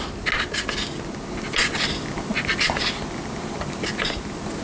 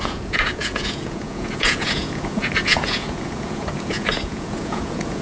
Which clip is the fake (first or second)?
second